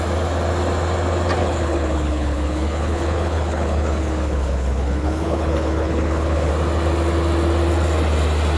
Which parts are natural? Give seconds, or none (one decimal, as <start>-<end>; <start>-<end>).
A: 0.0-1.4; 6.5-8.6